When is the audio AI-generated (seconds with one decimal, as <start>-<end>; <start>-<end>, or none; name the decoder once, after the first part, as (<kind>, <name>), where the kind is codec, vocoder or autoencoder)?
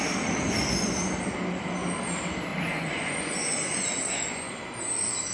2.5-4.5 (vocoder, Vocos)